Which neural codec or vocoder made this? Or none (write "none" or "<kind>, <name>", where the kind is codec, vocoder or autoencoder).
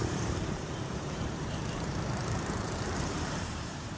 vocoder, BigVGAN v2